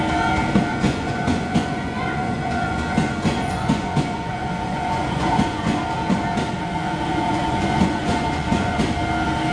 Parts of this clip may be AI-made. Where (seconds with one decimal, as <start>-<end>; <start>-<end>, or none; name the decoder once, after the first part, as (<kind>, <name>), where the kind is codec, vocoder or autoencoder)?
0.7-5.8 (vocoder, Vocos); 6.7-8.8